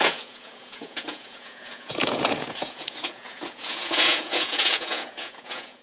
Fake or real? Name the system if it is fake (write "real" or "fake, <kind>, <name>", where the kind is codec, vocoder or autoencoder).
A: fake, vocoder, Vocos